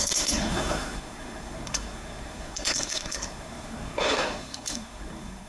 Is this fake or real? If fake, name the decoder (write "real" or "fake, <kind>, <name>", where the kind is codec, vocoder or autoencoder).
fake, codec, SNAC